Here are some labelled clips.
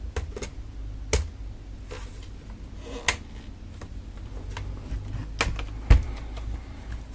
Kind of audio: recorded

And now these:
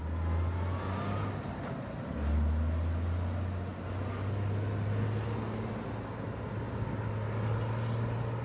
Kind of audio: recorded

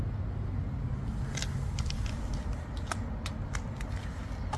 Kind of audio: recorded